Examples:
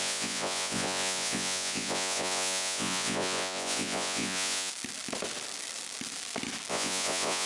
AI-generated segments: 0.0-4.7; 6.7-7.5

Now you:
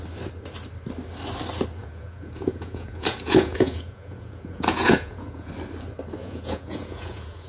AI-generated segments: 1.8-5.5; 6.2-7.5

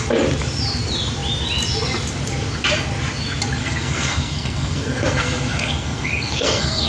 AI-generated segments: 3.6-6.9

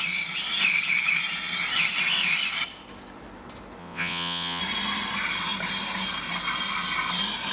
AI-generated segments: 3.8-4.6

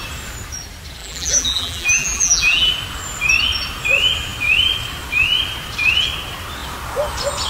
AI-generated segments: 1.0-2.7

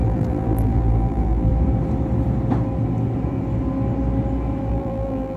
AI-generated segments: 0.0-1.5; 4.7-5.4